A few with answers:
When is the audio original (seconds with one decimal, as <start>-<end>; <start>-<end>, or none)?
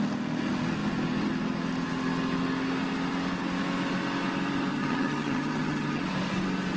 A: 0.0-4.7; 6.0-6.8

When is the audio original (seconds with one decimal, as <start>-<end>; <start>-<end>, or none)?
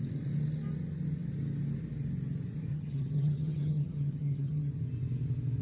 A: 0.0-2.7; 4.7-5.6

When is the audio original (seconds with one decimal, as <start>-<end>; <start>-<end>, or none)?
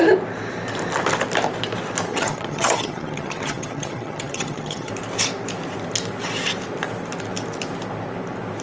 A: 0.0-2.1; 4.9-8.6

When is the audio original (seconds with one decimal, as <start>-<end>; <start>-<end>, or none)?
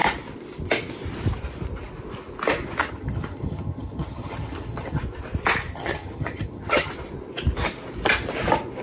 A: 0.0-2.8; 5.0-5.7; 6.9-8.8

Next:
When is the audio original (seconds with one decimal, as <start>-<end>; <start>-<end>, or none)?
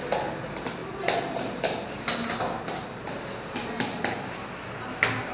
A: 0.0-5.3